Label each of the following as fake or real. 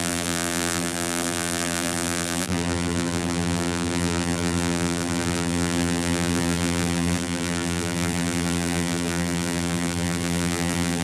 fake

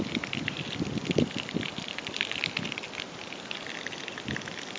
real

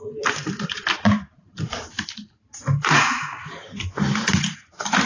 fake